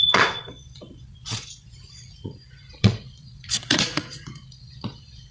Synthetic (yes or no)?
yes